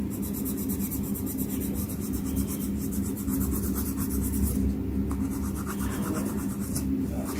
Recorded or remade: recorded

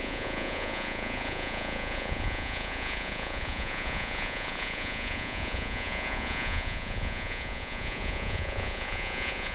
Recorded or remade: remade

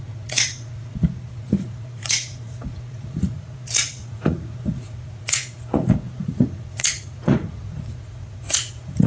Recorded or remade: remade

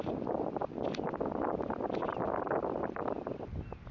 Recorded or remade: recorded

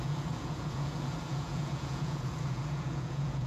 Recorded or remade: remade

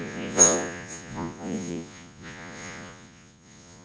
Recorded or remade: remade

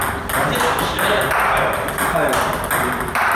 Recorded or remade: recorded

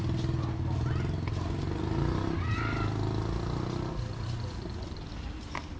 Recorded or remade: recorded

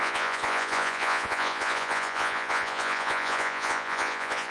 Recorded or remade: remade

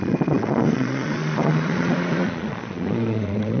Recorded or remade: remade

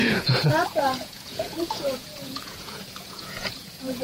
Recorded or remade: remade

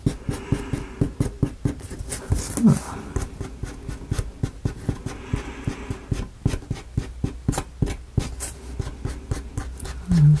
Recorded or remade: recorded